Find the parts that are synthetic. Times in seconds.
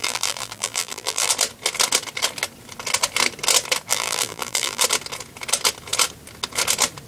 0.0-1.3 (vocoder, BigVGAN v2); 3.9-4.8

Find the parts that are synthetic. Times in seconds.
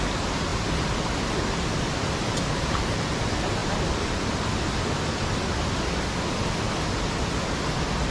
none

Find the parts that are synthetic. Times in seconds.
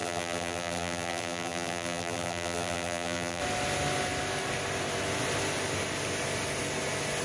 0.0-3.4 (vocoder, BigVGAN v2)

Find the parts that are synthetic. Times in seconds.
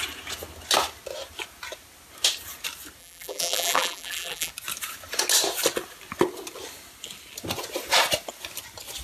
3.0-4.5 (vocoder, BigVGAN v2)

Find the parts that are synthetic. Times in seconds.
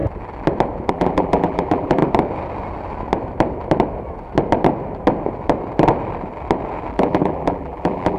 0.9-2.0 (vocoder, BigVGAN v2); 6.9-8.2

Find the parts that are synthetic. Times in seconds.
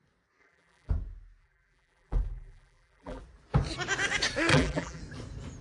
0.4-0.9 (vocoder, BigVGAN v2); 1.4-3.2; 4.5-5.0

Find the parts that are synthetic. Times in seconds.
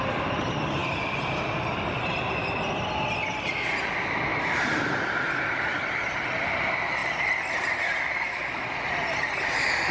4.3-5.1 (vocoder, BigVGAN v2)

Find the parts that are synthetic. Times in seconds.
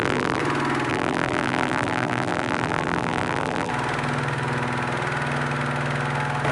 0.0-0.4 (vocoder, BigVGAN v2); 0.9-3.7